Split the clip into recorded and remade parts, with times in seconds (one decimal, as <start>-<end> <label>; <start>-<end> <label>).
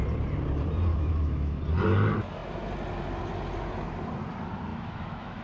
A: 0.0-0.9 recorded; 0.9-1.6 remade; 1.6-4.7 recorded; 4.7-5.4 remade